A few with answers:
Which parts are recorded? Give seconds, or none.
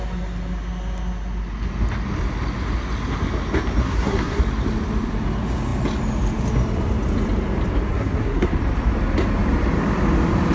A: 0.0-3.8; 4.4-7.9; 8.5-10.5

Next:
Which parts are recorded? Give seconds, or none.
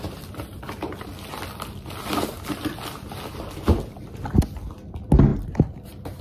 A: 0.0-6.2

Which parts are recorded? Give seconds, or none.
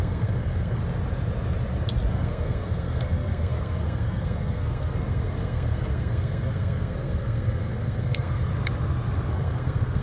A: 0.8-2.1; 8.5-9.3